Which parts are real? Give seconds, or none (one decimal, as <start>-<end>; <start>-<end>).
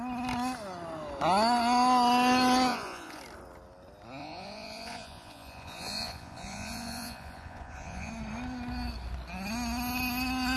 0.0-2.7; 3.2-4.2; 8.1-10.6